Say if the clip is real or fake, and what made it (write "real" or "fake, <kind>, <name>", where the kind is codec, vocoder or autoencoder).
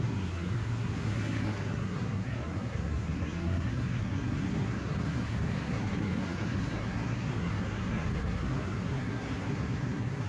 fake, codec, SNAC